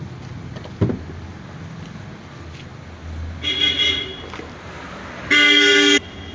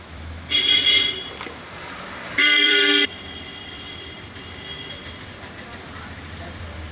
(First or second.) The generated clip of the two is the second